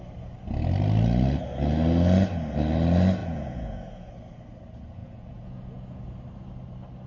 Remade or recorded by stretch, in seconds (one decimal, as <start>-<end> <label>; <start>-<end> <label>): 0.0-3.2 recorded; 3.2-4.1 remade; 4.1-5.0 recorded; 5.0-6.0 remade; 6.0-7.1 recorded